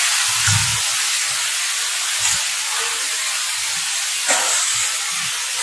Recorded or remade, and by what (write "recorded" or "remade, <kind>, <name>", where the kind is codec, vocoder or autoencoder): recorded